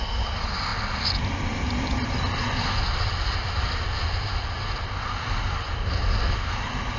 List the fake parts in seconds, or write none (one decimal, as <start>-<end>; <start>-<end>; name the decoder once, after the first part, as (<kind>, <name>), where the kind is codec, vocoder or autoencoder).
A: none